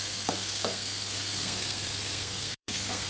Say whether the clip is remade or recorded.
remade